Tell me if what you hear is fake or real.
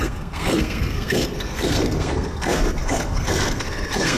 fake